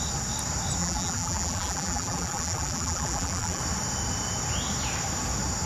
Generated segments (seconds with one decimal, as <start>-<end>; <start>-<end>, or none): 0.8-3.6